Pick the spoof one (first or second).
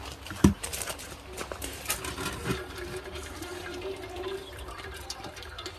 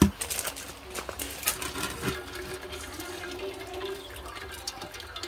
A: first